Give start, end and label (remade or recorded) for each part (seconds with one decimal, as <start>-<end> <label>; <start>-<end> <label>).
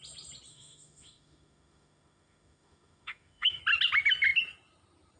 0.0-0.5 recorded; 0.5-3.6 remade; 3.6-5.2 recorded